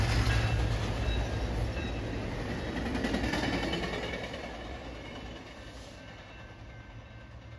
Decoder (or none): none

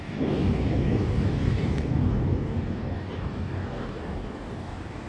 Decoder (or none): codec, DAC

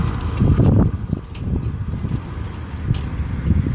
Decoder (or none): none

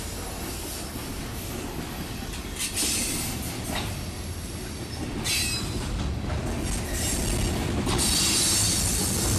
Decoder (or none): none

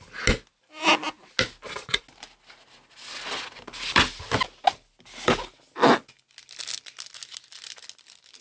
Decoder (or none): none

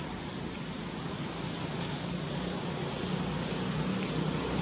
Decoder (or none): none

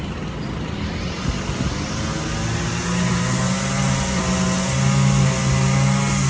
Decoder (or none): none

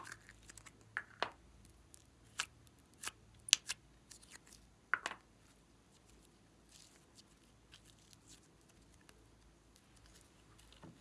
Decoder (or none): none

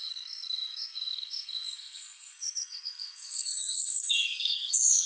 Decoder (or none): codec, SNAC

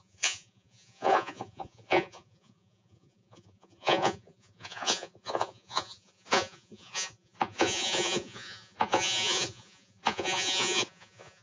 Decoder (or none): vocoder, Vocos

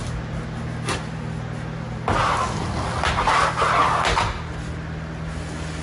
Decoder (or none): none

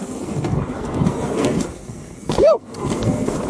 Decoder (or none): codec, SNAC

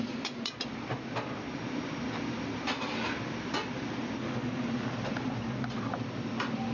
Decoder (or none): none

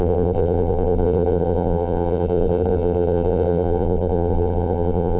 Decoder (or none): vocoder, BigVGAN v2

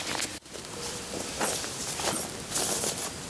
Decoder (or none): none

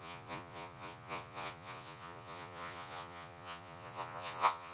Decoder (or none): vocoder, Vocos